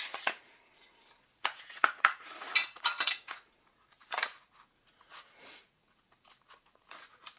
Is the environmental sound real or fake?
fake